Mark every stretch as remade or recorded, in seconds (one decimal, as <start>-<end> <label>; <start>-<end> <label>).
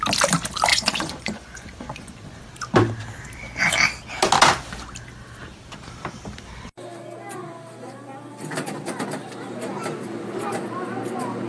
0.0-0.7 recorded; 0.7-2.4 remade; 2.4-11.5 recorded